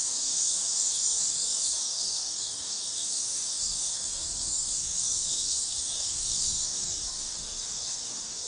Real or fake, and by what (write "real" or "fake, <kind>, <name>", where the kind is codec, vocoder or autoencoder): fake, codec, DAC